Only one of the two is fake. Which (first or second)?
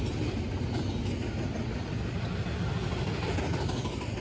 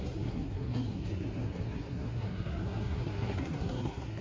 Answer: second